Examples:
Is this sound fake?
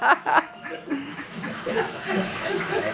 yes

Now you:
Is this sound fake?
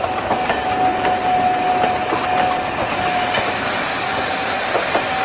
no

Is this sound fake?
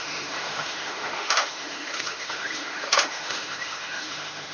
yes